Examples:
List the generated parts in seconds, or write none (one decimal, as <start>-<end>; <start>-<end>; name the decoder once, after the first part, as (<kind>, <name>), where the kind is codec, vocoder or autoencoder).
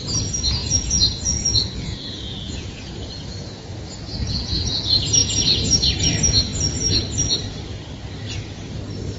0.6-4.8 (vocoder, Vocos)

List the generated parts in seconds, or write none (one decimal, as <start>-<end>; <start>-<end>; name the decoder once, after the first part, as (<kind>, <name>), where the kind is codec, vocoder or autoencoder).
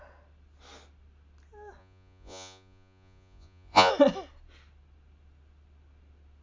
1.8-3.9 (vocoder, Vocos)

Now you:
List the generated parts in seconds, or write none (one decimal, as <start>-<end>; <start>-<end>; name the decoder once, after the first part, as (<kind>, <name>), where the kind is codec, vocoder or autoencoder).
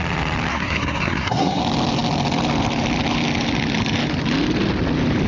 0.5-1.6 (codec, SNAC)